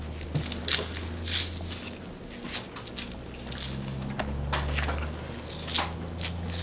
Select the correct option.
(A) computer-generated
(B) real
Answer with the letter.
B